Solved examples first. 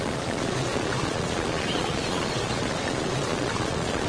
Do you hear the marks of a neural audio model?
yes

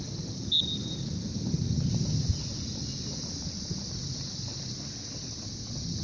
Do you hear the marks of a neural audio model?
no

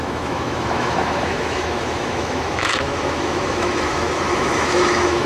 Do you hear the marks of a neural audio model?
yes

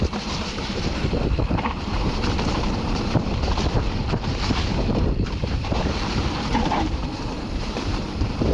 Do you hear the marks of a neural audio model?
yes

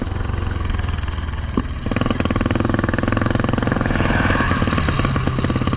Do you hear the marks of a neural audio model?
no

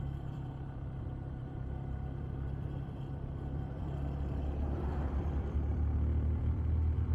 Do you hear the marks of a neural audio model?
yes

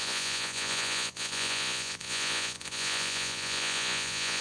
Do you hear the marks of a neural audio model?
yes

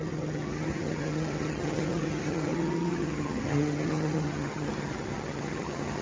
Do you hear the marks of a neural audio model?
yes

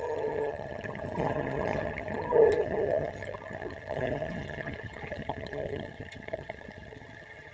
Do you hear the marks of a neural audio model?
yes